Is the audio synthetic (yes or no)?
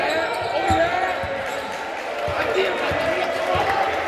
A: yes